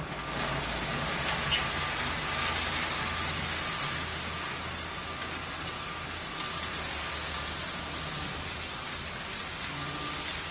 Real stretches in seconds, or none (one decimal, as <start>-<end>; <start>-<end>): 0.0-5.4; 6.3-10.5